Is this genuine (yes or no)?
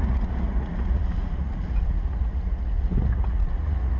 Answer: no